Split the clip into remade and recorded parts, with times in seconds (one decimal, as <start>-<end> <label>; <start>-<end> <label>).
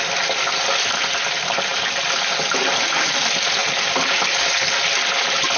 0.0-5.6 recorded